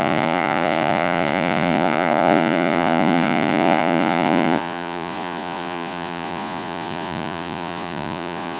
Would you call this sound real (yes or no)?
no